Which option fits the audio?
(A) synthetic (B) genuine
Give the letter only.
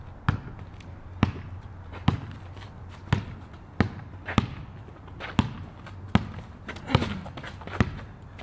B